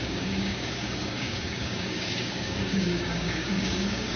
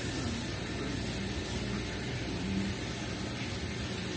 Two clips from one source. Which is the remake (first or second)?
first